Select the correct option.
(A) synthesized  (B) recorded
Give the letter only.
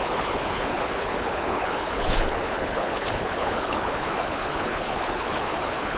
A